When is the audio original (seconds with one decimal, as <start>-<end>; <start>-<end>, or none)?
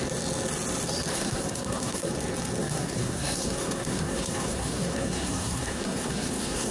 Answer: 0.0-1.1; 2.1-2.6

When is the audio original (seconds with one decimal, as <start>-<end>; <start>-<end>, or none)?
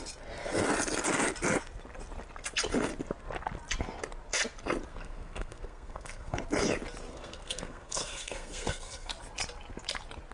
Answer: 0.0-4.9; 6.4-7.1; 9.1-10.3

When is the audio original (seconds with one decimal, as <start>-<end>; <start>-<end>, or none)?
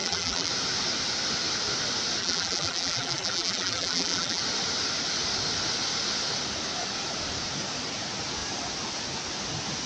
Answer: 0.5-2.2; 4.4-9.9